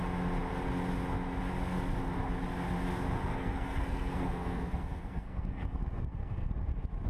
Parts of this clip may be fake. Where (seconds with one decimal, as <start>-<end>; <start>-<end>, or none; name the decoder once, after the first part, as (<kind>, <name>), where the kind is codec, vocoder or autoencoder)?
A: 3.3-6.5 (codec, SNAC)